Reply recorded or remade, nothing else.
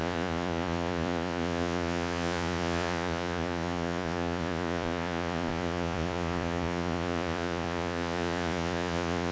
remade